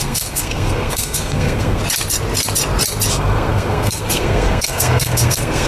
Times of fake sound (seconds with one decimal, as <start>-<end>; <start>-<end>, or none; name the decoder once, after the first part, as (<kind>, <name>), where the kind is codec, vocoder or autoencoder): 0.0-1.8 (codec, SNAC); 3.1-5.7